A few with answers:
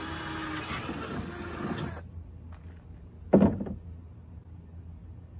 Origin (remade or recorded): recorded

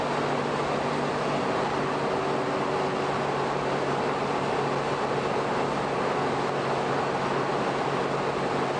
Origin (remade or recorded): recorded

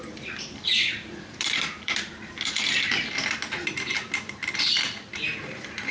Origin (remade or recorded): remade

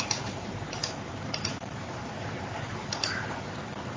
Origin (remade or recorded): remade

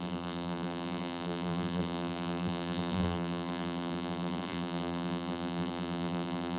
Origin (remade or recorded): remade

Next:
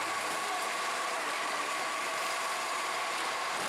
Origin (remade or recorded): remade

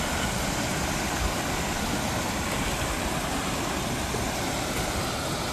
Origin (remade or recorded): recorded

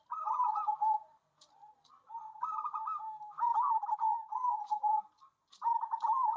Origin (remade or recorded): remade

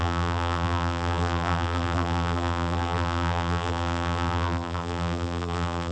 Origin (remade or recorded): remade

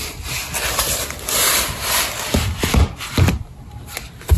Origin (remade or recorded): remade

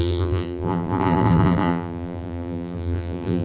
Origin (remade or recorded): remade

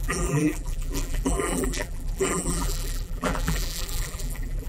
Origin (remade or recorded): remade